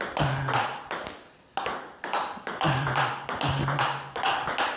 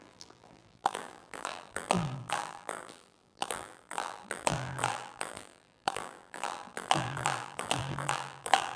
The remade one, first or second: second